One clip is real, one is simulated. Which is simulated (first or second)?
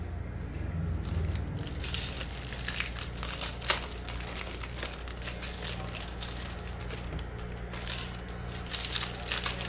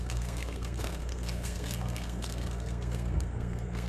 second